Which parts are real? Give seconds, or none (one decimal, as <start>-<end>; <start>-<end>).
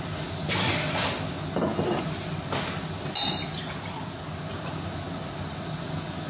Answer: 0.0-6.3